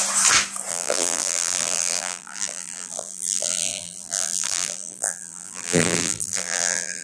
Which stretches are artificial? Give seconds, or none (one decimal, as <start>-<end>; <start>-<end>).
0.7-7.0